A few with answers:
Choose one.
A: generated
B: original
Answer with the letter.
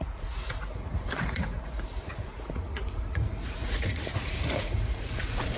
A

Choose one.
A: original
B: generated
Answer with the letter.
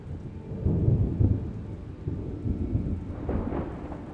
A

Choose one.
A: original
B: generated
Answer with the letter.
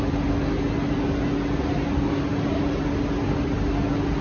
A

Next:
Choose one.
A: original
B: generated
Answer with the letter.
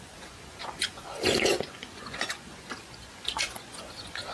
B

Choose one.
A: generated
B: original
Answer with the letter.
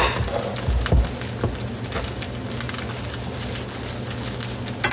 B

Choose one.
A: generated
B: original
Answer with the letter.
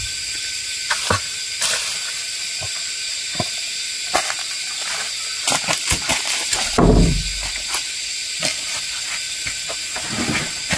B